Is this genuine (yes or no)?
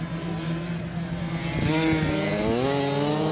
yes